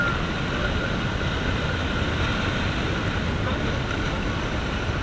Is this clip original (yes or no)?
yes